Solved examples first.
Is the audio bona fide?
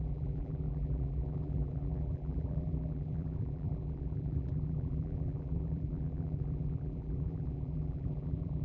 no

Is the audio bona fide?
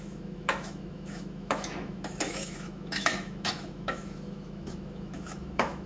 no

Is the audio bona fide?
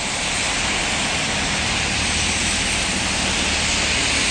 yes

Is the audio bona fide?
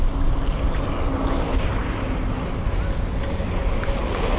yes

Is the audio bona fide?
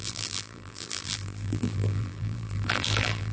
no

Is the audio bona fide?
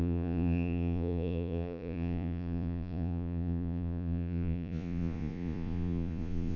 no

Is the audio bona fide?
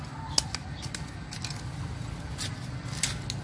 yes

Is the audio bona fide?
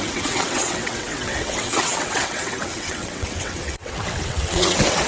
no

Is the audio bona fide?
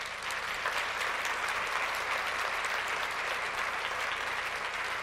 yes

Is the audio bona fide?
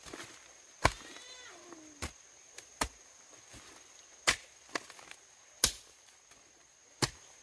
yes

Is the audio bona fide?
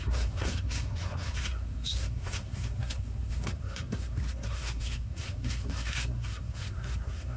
no